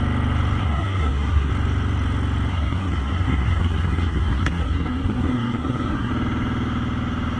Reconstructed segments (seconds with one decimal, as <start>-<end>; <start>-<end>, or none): 0.6-1.5; 2.5-6.1